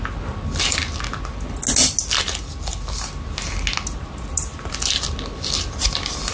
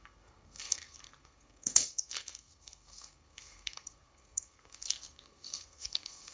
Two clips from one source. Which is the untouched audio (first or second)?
first